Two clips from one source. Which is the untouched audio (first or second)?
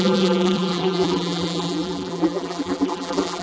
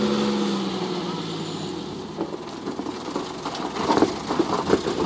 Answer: second